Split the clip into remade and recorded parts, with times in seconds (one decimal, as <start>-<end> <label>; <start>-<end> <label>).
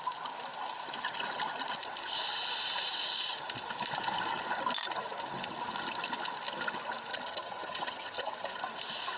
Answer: 0.0-7.1 recorded; 7.1-8.6 remade; 8.6-9.2 recorded